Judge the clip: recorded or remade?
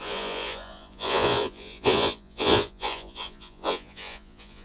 remade